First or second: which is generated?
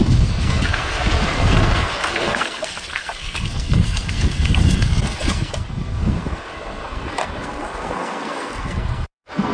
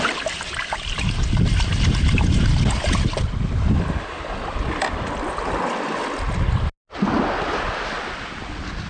first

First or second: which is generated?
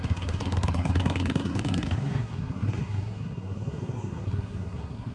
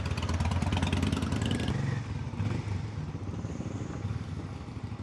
first